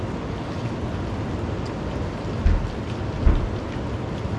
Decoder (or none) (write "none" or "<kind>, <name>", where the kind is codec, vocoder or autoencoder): none